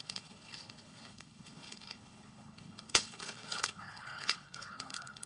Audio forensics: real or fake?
fake